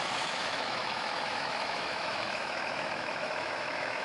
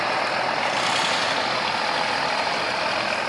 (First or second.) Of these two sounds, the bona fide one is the second